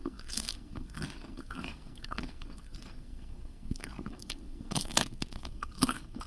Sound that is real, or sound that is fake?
fake